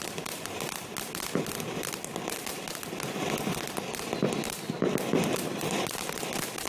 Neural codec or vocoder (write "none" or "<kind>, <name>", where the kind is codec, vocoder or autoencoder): none